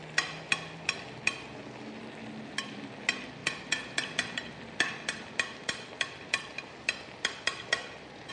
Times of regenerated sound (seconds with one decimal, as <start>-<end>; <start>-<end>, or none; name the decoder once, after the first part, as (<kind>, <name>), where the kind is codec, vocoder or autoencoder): 3.4-8.3 (vocoder, BigVGAN v2)

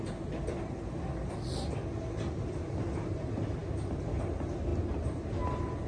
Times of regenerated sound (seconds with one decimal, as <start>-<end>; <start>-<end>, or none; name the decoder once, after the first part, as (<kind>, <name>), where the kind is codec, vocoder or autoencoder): none

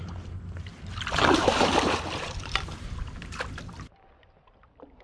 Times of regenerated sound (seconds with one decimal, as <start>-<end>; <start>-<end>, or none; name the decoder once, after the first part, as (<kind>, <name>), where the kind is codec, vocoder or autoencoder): none

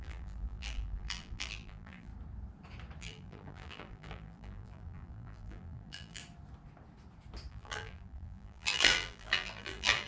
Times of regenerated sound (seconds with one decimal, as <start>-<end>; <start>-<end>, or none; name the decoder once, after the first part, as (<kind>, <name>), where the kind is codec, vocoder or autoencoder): 0.0-2.1 (vocoder, BigVGAN v2); 3.0-6.2; 7.5-10.1

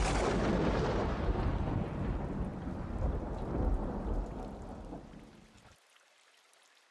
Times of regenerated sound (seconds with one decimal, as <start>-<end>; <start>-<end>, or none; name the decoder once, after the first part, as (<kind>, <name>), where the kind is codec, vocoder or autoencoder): none

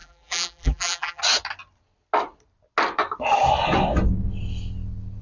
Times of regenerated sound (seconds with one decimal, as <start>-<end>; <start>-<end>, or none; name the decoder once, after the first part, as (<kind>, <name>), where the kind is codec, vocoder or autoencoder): 0.0-1.2 (vocoder, BigVGAN v2)

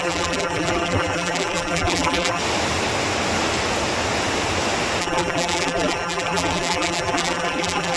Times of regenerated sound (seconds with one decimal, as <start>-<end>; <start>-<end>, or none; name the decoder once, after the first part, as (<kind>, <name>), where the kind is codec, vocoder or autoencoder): 0.0-2.4 (vocoder, BigVGAN v2); 5.0-8.0

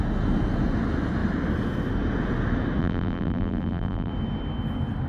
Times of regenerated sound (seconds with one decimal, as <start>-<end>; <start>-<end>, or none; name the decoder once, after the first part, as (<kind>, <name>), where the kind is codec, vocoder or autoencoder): 2.8-4.1 (vocoder, BigVGAN v2)